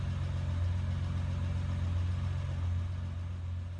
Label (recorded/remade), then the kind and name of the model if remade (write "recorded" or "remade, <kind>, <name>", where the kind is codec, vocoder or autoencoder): recorded